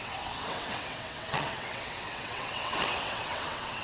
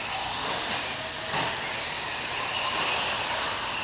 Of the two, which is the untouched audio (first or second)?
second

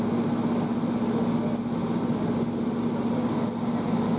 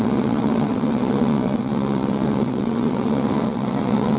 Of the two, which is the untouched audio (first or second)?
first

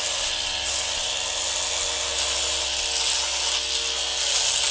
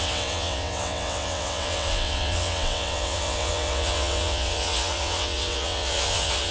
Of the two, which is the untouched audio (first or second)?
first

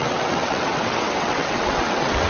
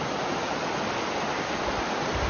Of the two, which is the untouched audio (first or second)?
second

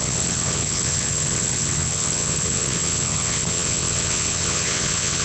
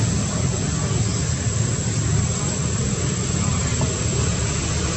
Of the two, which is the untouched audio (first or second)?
second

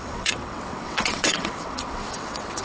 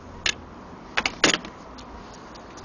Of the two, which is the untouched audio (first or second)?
second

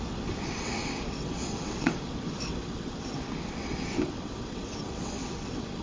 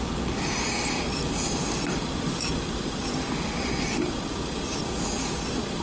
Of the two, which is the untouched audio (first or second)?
second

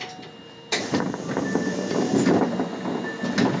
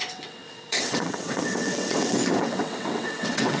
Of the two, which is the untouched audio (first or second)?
first